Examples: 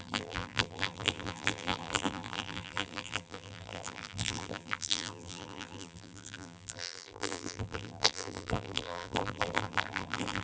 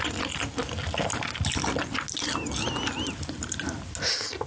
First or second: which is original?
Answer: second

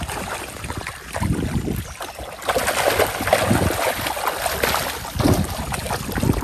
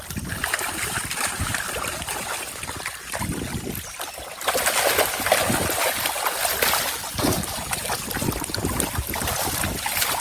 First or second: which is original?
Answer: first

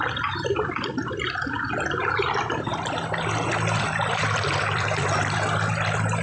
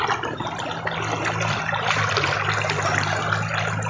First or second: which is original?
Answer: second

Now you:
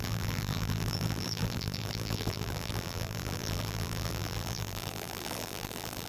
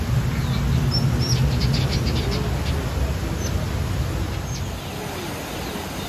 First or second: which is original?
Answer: second